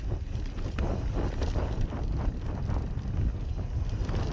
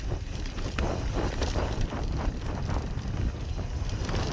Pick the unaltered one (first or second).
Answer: first